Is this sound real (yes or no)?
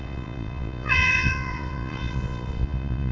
no